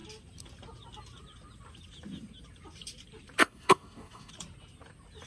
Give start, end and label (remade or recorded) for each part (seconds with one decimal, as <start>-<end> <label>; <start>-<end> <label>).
0.0-3.4 recorded; 3.4-4.3 remade; 4.3-5.3 recorded